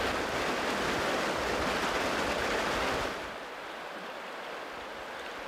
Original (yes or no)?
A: yes